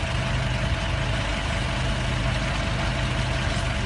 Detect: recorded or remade recorded